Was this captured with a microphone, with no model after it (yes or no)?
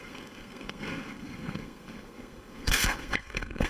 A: no